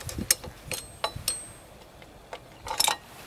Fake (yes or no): no